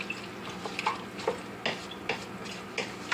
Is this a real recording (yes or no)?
yes